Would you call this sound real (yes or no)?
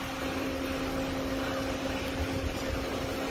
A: yes